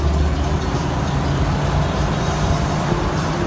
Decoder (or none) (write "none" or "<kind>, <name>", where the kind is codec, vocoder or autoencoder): none